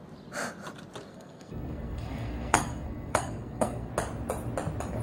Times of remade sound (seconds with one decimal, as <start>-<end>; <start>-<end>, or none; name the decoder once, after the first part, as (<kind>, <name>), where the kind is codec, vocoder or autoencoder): 1.1-3.9 (codec, SNAC)

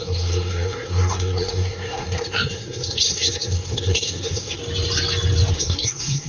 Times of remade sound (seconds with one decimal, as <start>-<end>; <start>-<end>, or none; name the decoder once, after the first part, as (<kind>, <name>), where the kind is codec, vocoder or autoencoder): 0.0-4.6 (codec, SNAC); 5.5-6.3

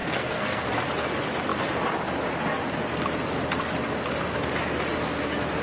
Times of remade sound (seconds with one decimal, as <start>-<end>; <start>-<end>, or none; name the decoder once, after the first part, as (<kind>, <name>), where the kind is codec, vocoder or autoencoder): 0.0-0.7 (codec, SNAC)

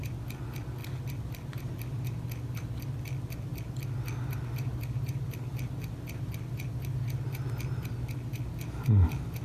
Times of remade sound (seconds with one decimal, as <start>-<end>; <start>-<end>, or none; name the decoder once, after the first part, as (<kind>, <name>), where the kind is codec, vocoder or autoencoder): none

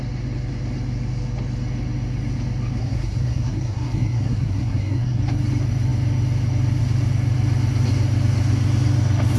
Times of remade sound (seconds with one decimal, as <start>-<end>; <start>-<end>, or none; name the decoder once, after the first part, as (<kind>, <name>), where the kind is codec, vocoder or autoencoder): 2.8-5.2 (codec, SNAC)

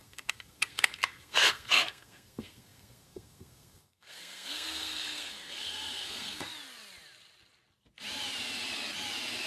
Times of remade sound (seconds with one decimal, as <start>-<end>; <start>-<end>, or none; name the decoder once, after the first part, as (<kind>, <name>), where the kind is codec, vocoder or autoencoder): 0.0-6.5 (codec, SNAC)

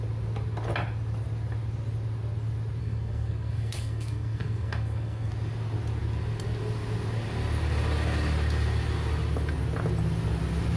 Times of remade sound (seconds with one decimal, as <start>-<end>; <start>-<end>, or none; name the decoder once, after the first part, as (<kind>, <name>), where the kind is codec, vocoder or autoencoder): 2.8-5.3 (codec, SNAC)

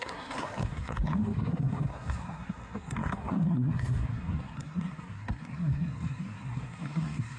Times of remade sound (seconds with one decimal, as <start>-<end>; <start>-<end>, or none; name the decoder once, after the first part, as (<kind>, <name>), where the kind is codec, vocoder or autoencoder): 0.0-7.4 (codec, SNAC)